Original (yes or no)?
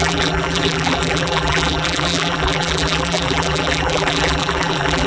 no